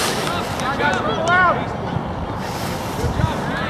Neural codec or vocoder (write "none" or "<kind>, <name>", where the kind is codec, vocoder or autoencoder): none